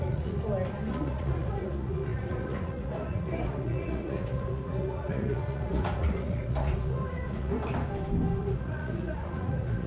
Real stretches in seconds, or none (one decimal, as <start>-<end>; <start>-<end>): 0.4-0.9; 7.5-8.4